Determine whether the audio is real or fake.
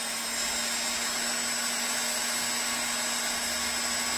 real